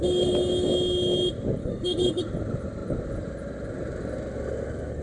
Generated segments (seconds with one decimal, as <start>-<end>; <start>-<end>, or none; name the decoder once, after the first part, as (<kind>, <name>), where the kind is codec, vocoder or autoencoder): 1.6-2.2 (codec, DAC)